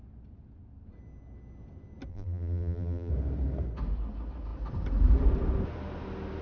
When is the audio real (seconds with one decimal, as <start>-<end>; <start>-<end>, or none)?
0.0-2.1; 3.1-6.4

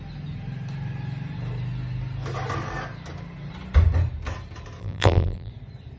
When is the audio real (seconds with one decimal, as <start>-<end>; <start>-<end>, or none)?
0.0-4.8; 5.5-6.0

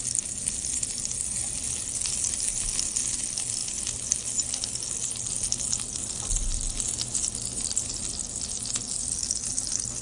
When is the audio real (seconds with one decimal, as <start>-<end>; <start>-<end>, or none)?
0.0-10.0

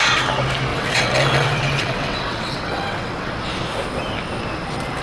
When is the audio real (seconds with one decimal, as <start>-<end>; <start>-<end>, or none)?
0.0-0.7; 3.3-5.0

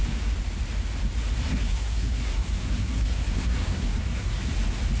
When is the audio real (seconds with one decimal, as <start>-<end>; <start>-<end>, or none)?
0.0-1.5; 4.5-5.0

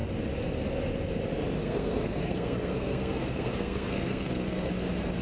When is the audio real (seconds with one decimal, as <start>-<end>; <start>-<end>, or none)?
0.0-1.6; 4.7-5.2